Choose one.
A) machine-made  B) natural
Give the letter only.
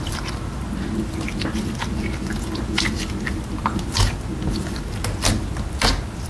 B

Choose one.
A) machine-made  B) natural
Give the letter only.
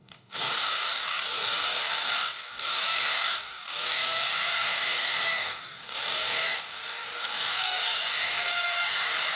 A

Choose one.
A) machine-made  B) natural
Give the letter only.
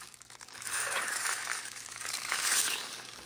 A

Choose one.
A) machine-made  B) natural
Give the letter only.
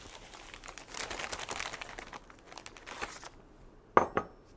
B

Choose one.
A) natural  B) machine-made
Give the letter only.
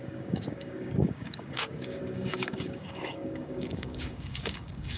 B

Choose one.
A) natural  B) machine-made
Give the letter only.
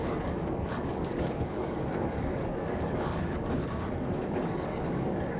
B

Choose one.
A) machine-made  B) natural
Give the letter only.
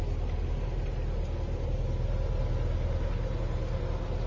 B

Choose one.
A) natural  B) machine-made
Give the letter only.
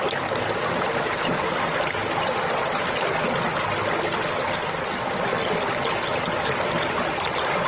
A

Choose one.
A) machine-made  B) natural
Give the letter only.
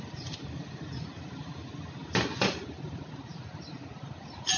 B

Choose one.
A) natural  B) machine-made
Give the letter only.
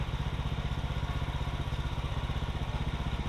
A